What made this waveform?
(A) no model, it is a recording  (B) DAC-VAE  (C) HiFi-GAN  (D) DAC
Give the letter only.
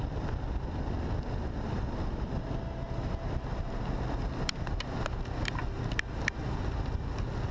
A